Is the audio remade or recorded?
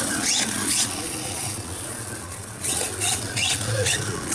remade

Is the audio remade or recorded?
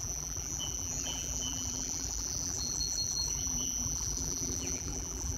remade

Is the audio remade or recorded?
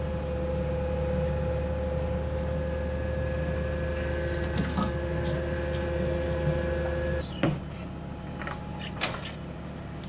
recorded